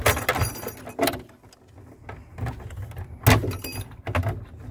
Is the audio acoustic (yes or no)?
yes